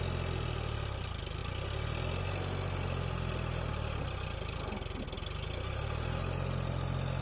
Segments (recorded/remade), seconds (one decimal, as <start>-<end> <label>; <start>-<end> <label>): 0.0-7.2 recorded